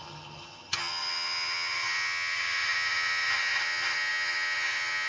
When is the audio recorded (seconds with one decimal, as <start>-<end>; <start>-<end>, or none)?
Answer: none